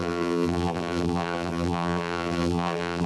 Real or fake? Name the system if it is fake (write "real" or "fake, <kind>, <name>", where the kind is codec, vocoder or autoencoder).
fake, vocoder, BigVGAN v2